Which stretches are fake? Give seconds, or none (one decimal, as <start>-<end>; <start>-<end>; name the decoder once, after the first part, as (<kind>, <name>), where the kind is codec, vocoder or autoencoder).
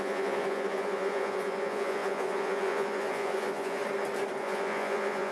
0.0-3.8 (vocoder, Vocos); 4.4-5.3